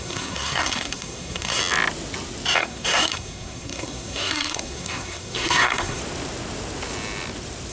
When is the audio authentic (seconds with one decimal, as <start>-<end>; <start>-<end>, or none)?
1.6-2.6; 6.0-7.7